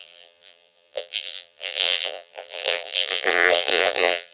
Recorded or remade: remade